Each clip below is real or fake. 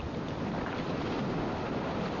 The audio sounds real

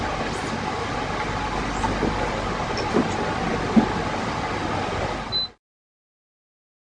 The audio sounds real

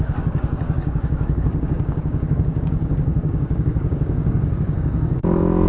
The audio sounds fake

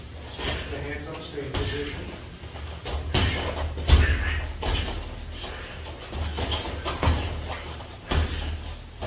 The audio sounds real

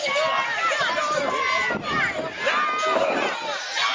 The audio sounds real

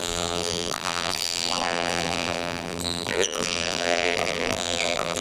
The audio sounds fake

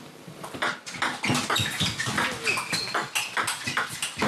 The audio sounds real